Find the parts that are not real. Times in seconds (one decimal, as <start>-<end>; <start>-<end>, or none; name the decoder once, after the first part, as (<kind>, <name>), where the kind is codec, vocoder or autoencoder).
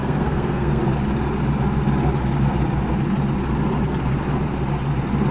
0.0-0.8 (codec, SNAC)